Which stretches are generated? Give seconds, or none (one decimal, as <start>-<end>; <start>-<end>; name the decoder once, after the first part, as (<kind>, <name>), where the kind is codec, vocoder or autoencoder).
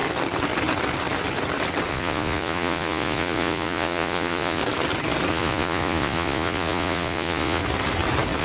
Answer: 1.9-4.6 (vocoder, Vocos); 5.3-7.6